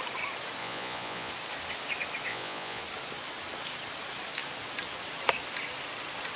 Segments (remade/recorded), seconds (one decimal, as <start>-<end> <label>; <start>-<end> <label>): 0.0-0.6 recorded; 0.6-1.3 remade; 1.3-2.3 recorded; 2.3-2.8 remade; 2.8-6.4 recorded